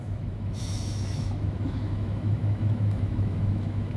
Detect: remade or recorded remade